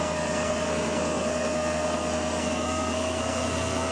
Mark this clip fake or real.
fake